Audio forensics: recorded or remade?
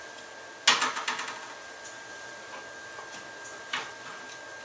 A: recorded